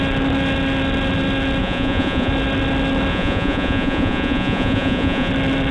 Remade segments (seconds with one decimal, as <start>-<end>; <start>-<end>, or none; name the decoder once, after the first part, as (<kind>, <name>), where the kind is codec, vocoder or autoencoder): 1.6-2.3 (vocoder, Vocos); 3.1-5.3